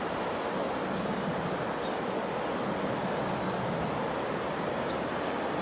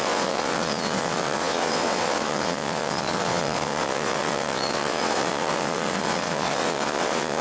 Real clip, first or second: first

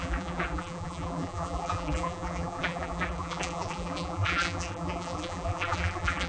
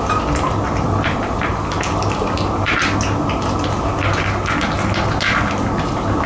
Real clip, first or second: second